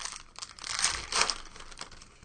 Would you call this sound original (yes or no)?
yes